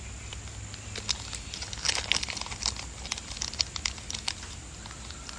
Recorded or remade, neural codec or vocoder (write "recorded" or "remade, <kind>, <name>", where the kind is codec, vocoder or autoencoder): recorded